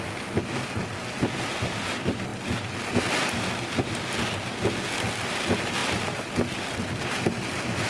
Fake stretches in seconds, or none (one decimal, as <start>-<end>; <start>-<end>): none